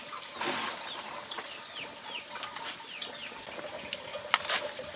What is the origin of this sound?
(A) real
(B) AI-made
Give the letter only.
A